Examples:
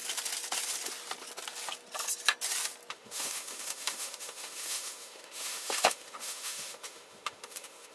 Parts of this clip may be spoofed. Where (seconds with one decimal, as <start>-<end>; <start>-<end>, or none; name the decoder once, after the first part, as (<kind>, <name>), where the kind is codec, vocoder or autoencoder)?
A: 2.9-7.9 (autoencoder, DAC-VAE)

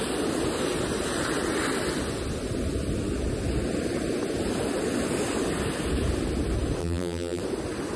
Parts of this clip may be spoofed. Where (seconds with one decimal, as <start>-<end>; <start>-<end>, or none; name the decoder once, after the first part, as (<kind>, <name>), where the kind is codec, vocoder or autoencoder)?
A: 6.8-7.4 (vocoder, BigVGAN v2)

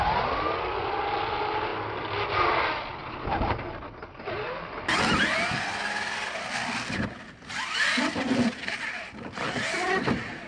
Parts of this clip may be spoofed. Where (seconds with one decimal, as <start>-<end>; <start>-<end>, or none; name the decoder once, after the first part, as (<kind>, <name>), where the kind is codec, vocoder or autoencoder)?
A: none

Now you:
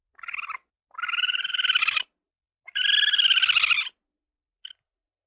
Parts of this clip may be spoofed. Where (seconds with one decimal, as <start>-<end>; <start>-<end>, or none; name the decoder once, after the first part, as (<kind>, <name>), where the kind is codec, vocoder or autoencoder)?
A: none

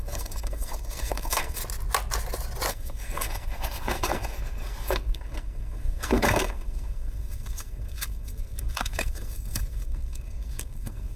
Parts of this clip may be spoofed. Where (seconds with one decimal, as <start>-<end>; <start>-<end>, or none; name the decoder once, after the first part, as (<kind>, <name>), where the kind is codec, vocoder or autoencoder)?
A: 0.0-1.6 (codec, SNAC); 2.7-11.2